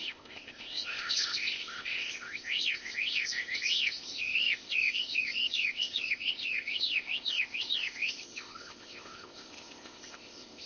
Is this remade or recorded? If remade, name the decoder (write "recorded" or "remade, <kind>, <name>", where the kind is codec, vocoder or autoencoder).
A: remade, codec, ZipCodec